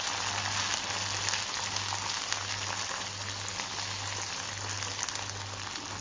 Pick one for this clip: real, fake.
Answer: real